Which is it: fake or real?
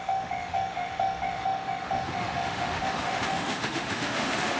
fake